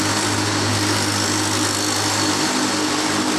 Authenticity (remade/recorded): recorded